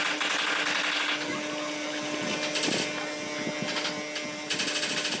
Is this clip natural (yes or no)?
yes